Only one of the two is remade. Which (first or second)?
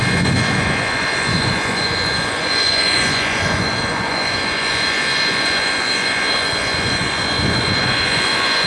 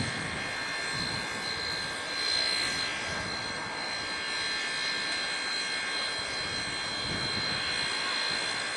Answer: first